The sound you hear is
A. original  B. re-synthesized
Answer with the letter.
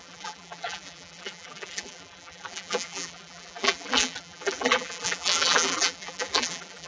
B